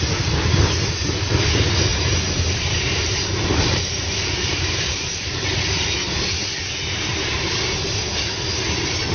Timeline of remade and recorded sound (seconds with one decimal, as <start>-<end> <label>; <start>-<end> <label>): 0.0-1.9 recorded; 1.9-5.9 remade; 5.9-9.1 recorded